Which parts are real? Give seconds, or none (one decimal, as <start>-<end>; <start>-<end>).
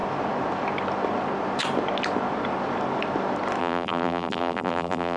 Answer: 0.0-3.6